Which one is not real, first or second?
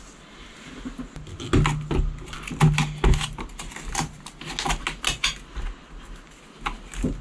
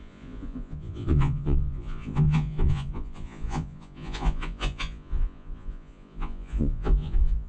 second